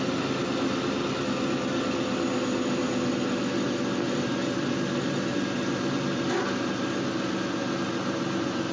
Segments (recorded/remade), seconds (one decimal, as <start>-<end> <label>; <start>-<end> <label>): 0.0-8.7 recorded

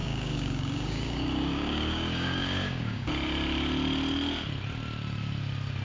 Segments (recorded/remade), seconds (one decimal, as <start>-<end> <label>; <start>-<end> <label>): 0.0-3.1 remade; 3.1-5.8 recorded

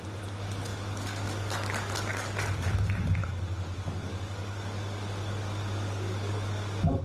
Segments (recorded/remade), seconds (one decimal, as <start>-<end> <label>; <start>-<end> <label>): 0.0-0.7 recorded; 0.7-2.7 remade; 2.7-3.2 recorded; 3.2-7.0 remade

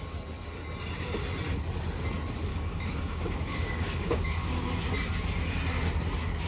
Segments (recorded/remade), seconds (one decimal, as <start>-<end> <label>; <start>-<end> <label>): 0.0-2.5 recorded; 2.5-4.7 remade; 4.7-6.5 recorded

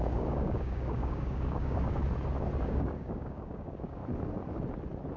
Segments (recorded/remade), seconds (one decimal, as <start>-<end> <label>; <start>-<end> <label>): 0.0-2.0 remade; 2.0-2.6 recorded; 2.6-4.0 remade; 4.0-5.2 recorded

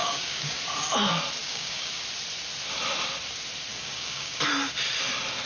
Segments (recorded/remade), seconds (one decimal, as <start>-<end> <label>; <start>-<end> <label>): 0.0-0.6 remade; 0.6-1.4 recorded; 1.4-1.9 remade; 1.9-3.7 recorded; 3.7-4.4 remade; 4.4-5.5 recorded